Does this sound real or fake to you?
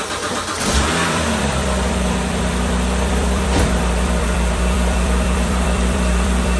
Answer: fake